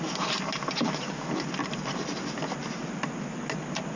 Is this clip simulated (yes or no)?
no